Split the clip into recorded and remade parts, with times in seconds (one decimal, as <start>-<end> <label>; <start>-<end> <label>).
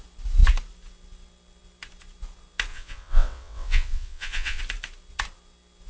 0.0-2.7 recorded; 2.7-4.6 remade; 4.6-5.9 recorded